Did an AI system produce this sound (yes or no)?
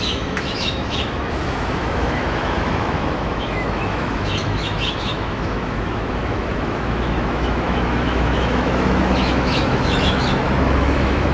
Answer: yes